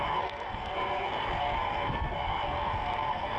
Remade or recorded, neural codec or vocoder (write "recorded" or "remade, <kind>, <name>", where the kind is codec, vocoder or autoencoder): remade, codec, SNAC